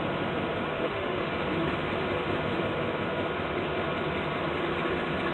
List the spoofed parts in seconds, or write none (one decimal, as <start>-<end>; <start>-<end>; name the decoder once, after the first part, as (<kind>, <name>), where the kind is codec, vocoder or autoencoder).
0.7-1.3 (autoencoder, DAC-VAE)